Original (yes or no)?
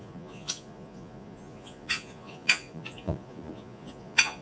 no